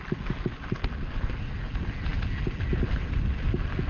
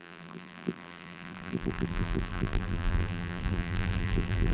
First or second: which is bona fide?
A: first